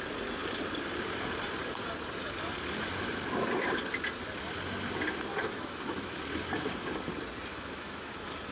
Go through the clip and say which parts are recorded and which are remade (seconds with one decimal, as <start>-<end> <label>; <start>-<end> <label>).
0.0-5.3 recorded; 5.3-6.2 remade; 6.2-7.5 recorded; 7.5-8.1 remade; 8.1-8.5 recorded